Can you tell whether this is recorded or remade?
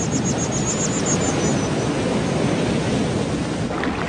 recorded